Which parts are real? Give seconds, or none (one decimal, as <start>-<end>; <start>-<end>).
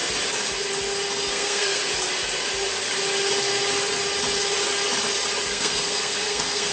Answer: 0.0-1.3; 1.8-5.5